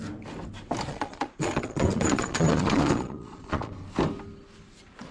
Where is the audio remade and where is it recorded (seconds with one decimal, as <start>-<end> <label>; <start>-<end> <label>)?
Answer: 0.0-0.9 recorded; 0.9-3.7 remade; 3.7-5.1 recorded